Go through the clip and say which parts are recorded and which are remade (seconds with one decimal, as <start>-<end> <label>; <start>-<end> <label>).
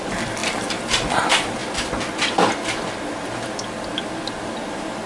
0.0-0.4 recorded; 0.4-1.2 remade; 1.2-1.6 recorded; 1.6-5.1 remade